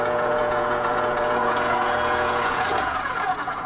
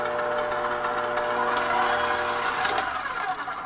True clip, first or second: second